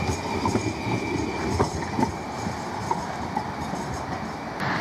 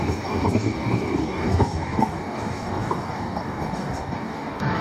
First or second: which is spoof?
second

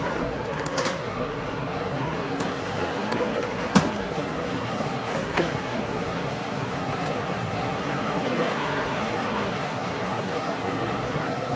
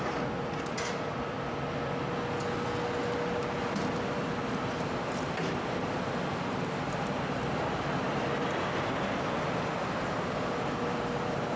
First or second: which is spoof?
first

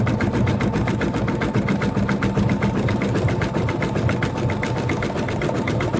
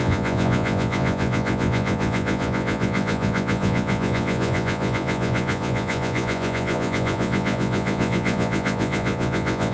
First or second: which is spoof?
second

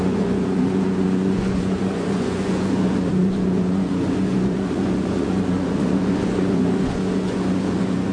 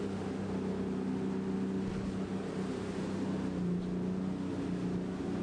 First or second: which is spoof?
first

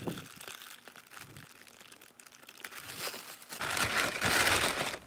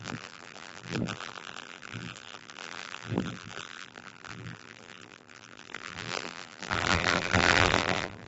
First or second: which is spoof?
second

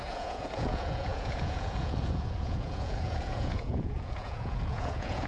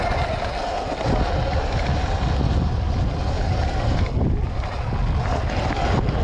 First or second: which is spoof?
first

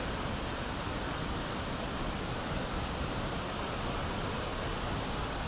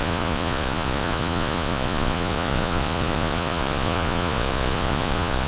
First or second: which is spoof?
second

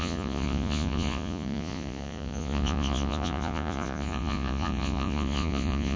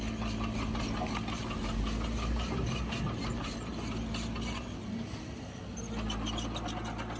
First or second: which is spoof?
first